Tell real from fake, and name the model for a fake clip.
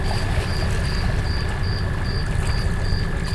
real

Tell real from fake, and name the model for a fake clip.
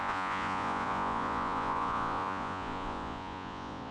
fake, vocoder, Vocos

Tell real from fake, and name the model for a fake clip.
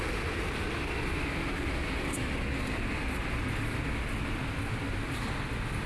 real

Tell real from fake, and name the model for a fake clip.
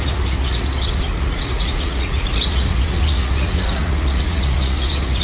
fake, vocoder, Vocos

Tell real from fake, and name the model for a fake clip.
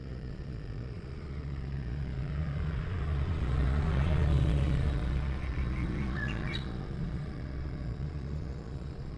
fake, vocoder, Vocos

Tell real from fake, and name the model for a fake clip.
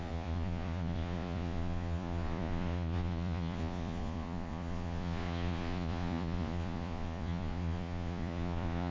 fake, vocoder, Vocos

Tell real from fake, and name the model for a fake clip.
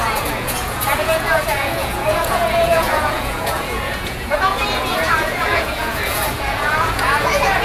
fake, vocoder, Vocos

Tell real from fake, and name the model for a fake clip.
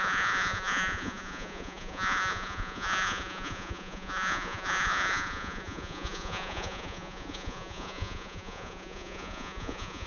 fake, vocoder, Vocos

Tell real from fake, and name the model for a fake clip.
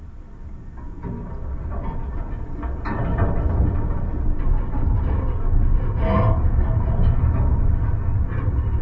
real